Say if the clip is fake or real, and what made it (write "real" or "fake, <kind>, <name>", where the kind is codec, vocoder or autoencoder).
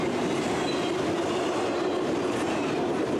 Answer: real